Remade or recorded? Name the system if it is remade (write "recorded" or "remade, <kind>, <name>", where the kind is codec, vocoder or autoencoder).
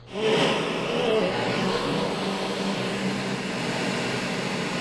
recorded